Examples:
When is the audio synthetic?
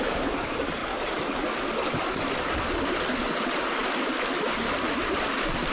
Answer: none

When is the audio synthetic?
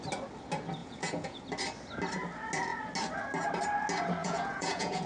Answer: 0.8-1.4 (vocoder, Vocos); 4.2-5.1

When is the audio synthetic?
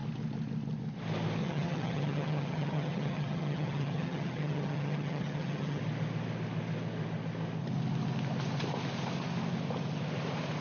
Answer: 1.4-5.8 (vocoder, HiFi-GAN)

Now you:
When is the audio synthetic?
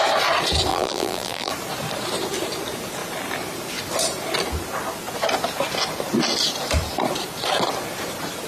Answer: 0.7-1.5 (vocoder, BigVGAN v2)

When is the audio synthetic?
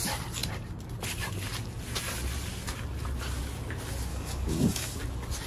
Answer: 4.1-5.0 (codec, DAC)